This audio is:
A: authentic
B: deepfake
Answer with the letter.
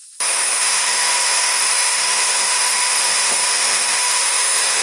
B